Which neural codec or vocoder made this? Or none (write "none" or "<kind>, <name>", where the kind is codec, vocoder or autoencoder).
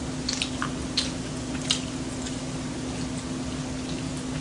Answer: none